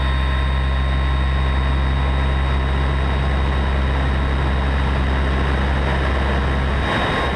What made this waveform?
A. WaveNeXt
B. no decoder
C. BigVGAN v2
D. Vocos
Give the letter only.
B